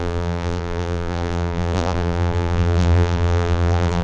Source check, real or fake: fake